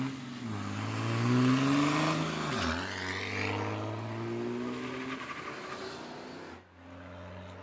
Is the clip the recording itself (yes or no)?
yes